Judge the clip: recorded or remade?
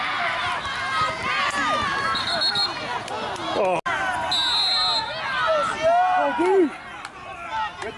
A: recorded